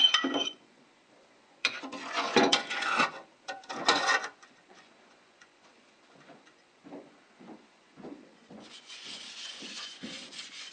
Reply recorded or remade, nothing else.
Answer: remade